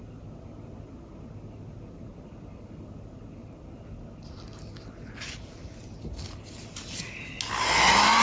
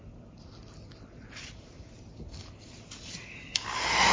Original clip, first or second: first